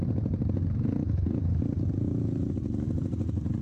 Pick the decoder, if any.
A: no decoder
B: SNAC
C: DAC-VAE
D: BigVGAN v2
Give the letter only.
A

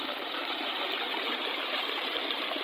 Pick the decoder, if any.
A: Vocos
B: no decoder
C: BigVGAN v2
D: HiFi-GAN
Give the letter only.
C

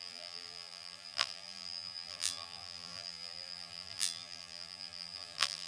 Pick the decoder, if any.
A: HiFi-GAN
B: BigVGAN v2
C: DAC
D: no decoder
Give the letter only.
B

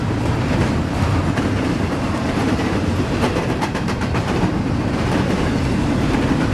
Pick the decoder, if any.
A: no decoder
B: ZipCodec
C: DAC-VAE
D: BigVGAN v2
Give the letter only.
D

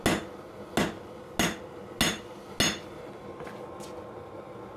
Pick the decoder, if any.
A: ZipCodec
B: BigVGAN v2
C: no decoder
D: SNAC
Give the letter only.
C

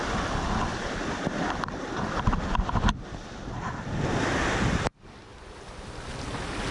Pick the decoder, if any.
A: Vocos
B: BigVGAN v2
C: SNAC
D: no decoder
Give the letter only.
D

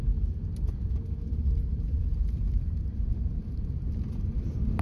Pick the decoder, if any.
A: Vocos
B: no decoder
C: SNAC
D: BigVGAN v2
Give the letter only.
D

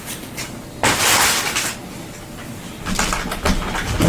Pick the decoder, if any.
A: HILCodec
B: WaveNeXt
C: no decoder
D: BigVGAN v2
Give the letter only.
C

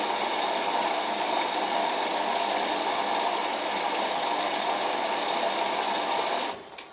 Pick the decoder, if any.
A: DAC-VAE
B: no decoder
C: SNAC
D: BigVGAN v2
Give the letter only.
B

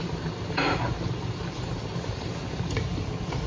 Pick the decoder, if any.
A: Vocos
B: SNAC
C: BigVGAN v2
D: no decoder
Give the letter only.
C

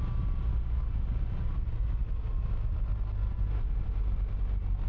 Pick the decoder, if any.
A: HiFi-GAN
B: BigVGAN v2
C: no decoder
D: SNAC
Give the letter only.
C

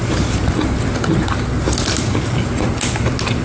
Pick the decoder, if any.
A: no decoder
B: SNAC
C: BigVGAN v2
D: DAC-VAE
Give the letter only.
A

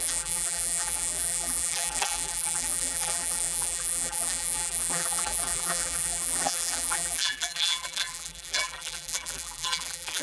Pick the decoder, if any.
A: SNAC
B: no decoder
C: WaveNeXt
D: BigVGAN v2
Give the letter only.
D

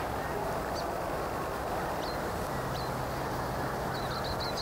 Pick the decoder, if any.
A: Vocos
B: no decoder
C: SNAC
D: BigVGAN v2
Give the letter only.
B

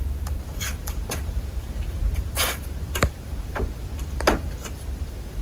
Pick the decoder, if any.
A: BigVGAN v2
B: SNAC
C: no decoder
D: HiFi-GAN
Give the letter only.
A